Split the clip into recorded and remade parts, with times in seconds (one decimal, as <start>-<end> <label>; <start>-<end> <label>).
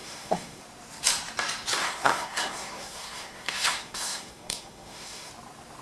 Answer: 0.0-0.6 remade; 0.6-1.8 recorded; 1.8-5.3 remade; 5.3-5.8 recorded